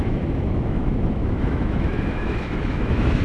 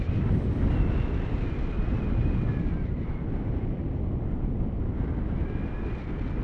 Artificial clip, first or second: first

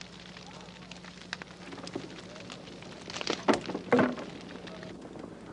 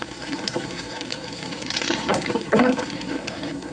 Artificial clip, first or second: second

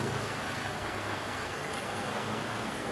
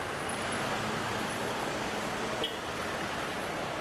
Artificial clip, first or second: first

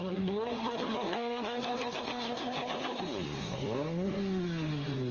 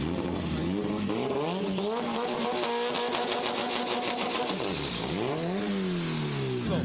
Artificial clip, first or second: first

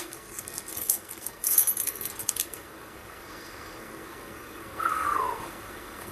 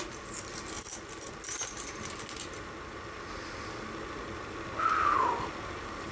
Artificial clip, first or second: first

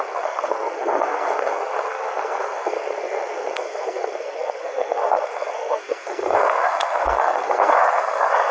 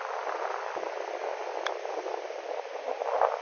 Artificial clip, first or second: first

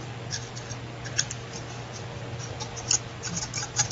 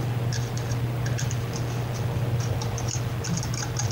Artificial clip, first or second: second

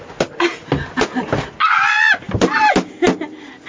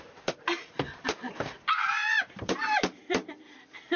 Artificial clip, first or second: second